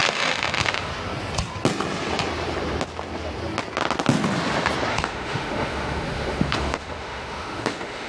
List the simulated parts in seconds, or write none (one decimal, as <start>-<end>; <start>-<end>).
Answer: 0.0-0.9; 4.9-8.1